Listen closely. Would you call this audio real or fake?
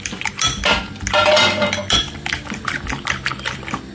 real